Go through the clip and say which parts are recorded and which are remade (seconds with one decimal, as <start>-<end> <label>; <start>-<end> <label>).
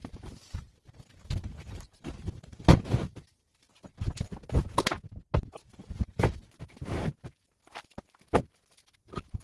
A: 0.0-3.7 remade; 3.7-5.7 recorded; 5.7-9.4 remade